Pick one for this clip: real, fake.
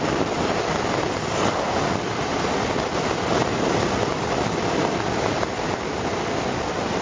real